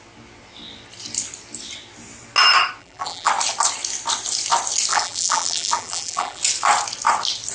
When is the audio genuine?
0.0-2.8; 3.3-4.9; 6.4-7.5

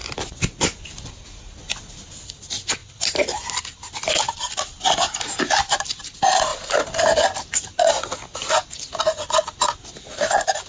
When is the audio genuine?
0.0-6.5; 7.9-10.7